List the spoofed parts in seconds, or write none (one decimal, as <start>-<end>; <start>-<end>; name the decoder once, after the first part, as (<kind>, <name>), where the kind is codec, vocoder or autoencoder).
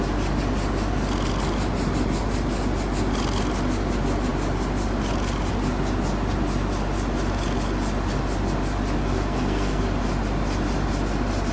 9.1-9.8 (codec, SNAC)